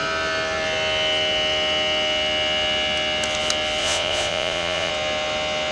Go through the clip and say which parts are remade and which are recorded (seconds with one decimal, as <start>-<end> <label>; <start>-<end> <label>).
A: 0.0-3.8 recorded; 3.8-4.9 remade; 4.9-5.7 recorded